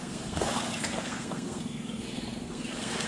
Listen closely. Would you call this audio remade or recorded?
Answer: remade